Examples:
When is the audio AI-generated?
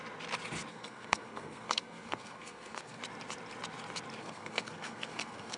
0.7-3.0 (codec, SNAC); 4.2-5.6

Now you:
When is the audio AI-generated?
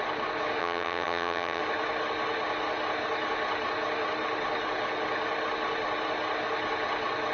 0.6-1.6 (vocoder, HiFi-GAN)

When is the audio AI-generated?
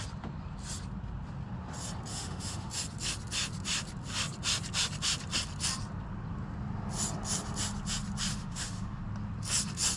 2.1-2.7 (autoencoder, DAC-VAE); 8.3-9.0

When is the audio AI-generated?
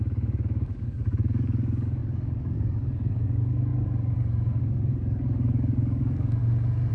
0.0-6.4 (codec, DAC)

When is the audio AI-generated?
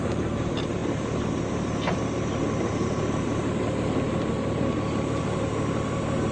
none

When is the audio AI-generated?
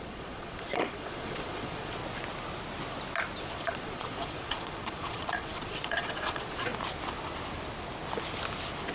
0.0-2.0 (vocoder, Vocos); 3.4-6.7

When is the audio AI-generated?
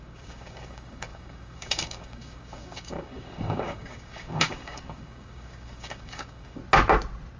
0.0-6.6 (codec, DAC)